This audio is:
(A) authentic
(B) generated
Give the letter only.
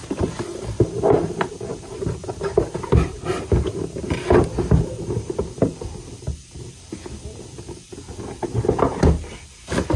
A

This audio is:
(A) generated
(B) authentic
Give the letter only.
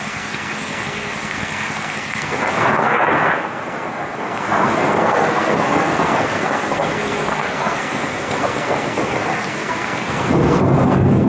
A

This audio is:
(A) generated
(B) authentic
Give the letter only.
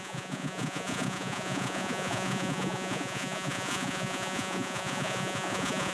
A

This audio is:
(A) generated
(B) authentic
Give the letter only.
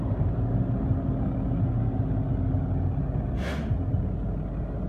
B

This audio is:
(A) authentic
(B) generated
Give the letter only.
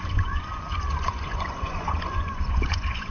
B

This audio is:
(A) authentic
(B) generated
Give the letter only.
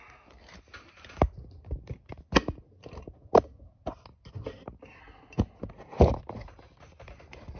A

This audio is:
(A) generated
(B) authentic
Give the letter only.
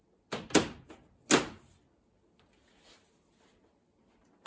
B